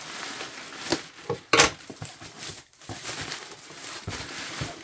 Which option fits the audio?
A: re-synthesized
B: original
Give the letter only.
B